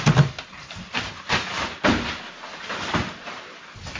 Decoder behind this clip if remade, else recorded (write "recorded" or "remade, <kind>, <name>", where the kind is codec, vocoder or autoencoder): recorded